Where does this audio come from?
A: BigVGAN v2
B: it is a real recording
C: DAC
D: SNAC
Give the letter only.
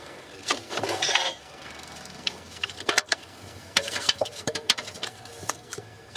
D